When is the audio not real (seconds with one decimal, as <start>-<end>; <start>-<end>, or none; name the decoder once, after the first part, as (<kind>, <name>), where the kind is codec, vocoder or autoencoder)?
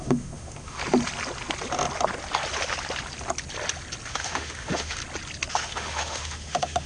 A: 0.0-0.8 (autoencoder, DAC-VAE); 4.1-5.0; 5.5-6.9